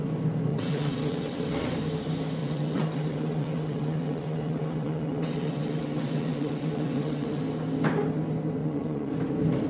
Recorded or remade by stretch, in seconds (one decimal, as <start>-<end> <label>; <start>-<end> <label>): 0.0-0.5 recorded; 0.5-1.7 remade; 1.7-2.4 recorded; 2.4-7.4 remade; 7.4-8.6 recorded; 8.6-9.1 remade; 9.1-9.7 recorded